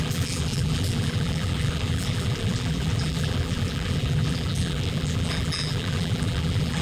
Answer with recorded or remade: remade